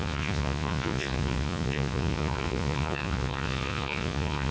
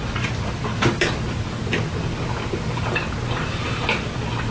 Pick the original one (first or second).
second